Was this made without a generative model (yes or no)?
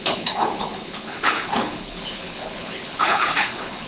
no